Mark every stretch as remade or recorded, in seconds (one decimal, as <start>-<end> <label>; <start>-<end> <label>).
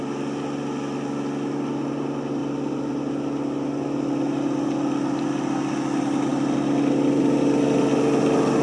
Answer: 0.0-8.6 recorded